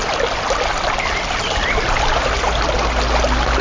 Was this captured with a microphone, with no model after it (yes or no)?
yes